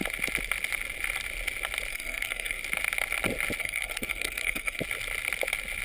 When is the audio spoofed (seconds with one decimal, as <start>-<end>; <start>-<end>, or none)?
1.9-2.6; 3.6-4.8